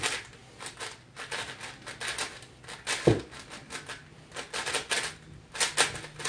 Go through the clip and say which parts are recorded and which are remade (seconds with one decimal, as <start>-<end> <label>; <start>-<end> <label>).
0.0-6.3 recorded